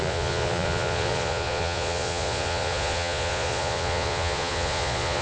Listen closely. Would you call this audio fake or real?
fake